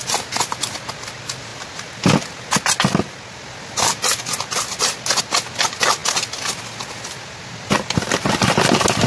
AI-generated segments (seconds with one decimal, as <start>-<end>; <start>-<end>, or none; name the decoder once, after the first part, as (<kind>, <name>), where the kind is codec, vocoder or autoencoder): none